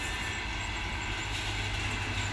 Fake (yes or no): no